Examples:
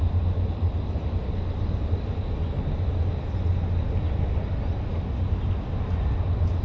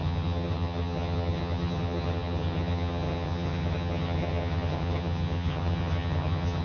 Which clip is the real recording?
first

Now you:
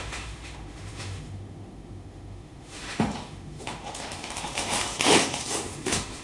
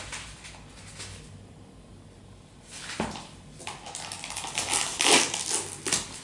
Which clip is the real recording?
second